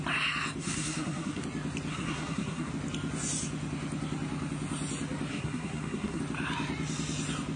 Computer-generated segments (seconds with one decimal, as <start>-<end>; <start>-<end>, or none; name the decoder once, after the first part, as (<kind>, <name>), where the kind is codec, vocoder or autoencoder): 0.6-1.4 (codec, SNAC); 1.9-2.7; 5.3-6.2